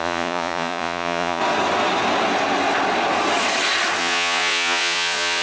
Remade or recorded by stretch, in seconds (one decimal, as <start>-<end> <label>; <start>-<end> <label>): 0.0-1.4 remade; 1.4-4.0 recorded; 4.0-5.4 remade